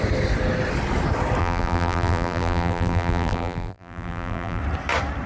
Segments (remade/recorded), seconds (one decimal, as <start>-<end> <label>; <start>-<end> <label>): 0.0-1.4 recorded; 1.4-4.6 remade; 4.6-5.3 recorded

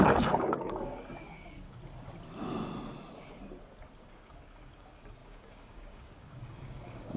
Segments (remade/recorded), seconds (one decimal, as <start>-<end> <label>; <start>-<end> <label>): 0.0-1.8 remade; 1.8-4.0 recorded; 4.0-7.2 remade